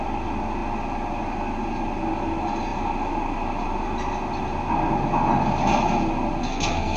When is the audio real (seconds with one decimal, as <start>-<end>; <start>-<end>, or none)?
0.0-6.4